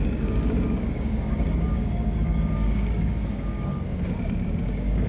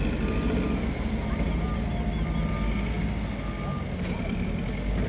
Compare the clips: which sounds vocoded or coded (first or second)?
first